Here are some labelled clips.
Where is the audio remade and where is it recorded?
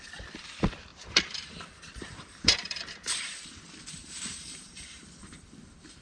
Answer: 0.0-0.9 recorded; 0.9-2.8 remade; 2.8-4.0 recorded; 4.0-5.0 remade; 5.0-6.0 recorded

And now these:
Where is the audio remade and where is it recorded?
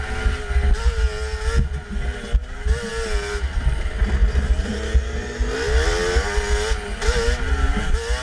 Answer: 0.0-8.2 recorded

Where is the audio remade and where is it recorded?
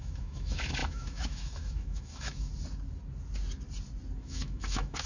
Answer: 0.0-2.5 remade; 2.5-4.2 recorded; 4.2-5.1 remade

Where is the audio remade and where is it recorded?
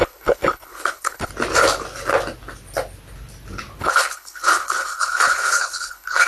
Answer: 0.0-1.3 remade; 1.3-3.8 recorded; 3.8-6.3 remade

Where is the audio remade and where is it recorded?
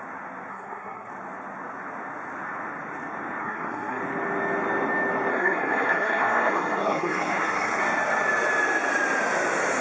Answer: 0.0-0.5 recorded; 0.5-1.1 remade; 1.1-3.4 recorded; 3.4-4.0 remade; 4.0-5.3 recorded; 5.3-7.8 remade; 7.8-9.8 recorded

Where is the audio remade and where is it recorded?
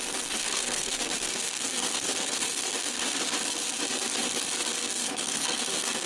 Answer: 0.0-0.4 recorded; 0.4-3.2 remade; 3.2-4.8 recorded; 4.8-6.1 remade